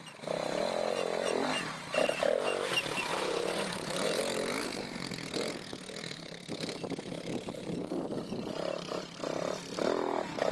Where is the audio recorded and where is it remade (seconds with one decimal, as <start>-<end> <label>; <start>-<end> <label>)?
0.0-3.1 recorded; 3.1-4.2 remade; 4.2-10.5 recorded